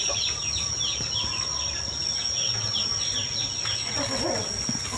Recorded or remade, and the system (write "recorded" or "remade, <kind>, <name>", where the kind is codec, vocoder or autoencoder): recorded